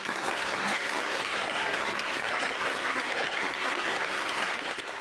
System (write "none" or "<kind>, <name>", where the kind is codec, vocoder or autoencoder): codec, SNAC